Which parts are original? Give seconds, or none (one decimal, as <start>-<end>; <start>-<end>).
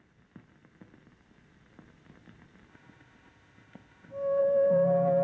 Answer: 0.0-2.7; 4.4-5.2